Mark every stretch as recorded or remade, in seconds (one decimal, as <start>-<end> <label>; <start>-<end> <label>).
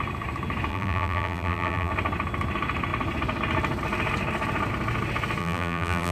0.0-0.7 recorded; 0.7-1.9 remade; 1.9-5.4 recorded; 5.4-6.1 remade